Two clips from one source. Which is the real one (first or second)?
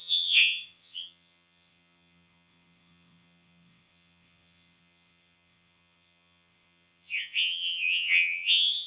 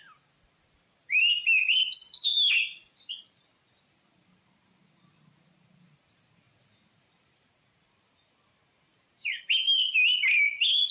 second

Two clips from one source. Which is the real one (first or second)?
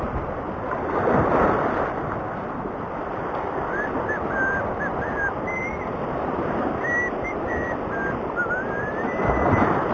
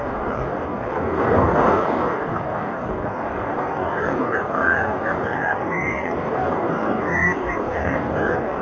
first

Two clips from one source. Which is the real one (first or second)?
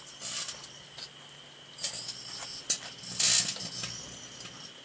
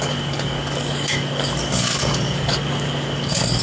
first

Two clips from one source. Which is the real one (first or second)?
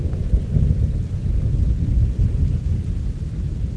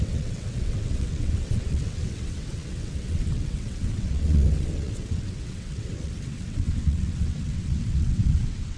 first